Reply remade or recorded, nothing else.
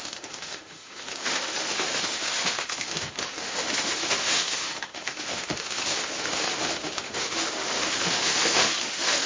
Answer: remade